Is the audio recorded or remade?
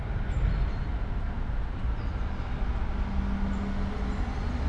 recorded